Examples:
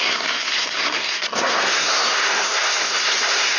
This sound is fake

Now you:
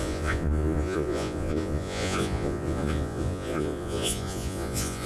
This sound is fake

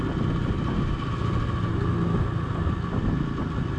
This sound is real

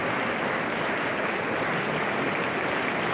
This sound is real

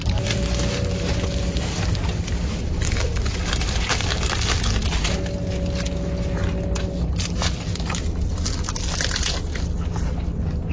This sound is real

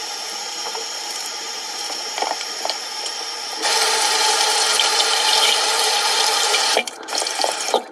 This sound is fake